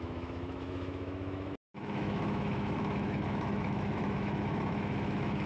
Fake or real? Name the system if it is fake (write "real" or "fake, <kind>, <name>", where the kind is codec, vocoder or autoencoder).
fake, autoencoder, DAC-VAE